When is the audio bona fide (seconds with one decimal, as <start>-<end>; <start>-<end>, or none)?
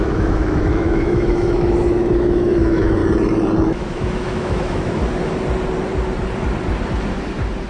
3.0-3.6; 5.0-7.7